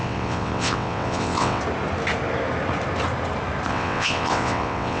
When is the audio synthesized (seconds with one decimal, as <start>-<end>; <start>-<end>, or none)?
0.0-1.6; 3.7-5.0